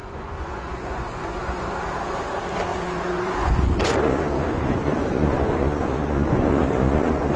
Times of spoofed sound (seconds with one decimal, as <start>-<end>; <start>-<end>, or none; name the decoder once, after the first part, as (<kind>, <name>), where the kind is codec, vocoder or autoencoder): 0.0-1.6 (vocoder, Vocos); 2.7-7.4